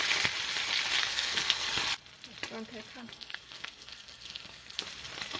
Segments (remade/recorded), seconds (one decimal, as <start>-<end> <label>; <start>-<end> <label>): 0.0-1.0 recorded; 1.0-1.8 remade; 1.8-3.0 recorded; 3.0-4.8 remade; 4.8-5.4 recorded